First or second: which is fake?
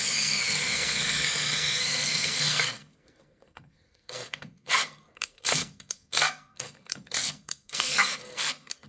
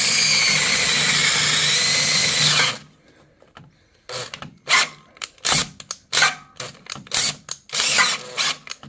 first